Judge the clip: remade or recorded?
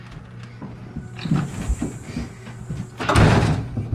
recorded